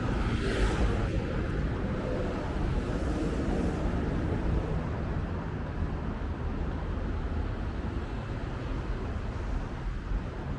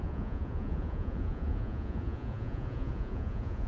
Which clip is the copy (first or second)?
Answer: second